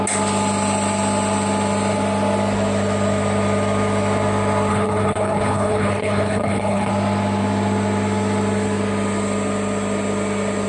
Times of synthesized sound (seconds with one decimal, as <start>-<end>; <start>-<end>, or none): 4.7-6.9